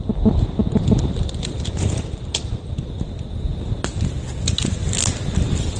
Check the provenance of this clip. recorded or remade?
recorded